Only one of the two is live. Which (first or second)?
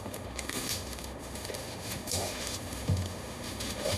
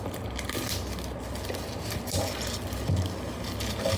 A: second